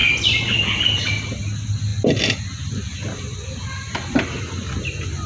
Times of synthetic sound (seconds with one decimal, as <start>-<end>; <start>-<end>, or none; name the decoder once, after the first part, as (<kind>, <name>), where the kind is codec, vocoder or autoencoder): none